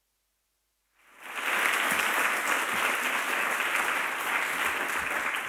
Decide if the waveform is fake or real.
real